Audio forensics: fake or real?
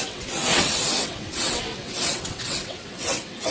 fake